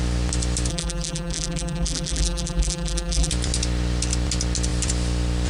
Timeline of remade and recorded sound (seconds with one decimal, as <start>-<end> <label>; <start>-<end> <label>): 0.0-0.7 recorded; 0.7-3.3 remade; 3.3-5.5 recorded